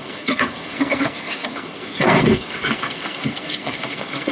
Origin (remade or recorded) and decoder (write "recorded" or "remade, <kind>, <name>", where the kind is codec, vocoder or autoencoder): remade, codec, SNAC